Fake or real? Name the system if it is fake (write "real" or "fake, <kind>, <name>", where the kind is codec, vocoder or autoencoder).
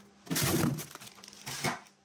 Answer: real